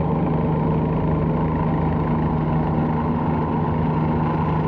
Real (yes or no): yes